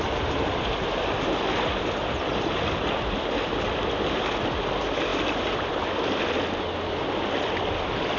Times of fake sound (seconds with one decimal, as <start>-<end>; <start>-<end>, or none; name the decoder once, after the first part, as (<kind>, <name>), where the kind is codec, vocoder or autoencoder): none